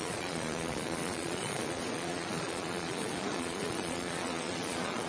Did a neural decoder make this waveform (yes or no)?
yes